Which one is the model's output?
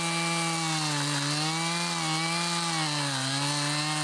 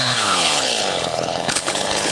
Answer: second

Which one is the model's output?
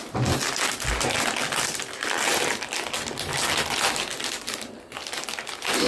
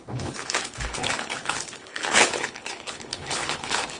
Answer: second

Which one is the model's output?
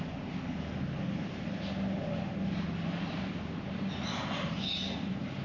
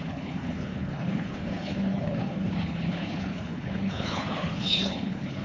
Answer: second